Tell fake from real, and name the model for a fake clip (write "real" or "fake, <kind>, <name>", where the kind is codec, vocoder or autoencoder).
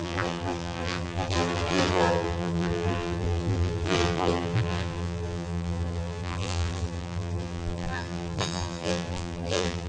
fake, vocoder, BigVGAN v2